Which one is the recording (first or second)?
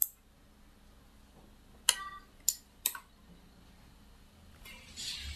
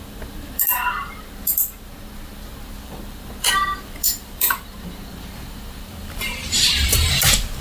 first